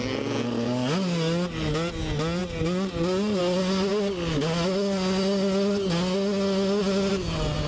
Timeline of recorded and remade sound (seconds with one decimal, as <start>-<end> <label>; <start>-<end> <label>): 0.0-7.7 recorded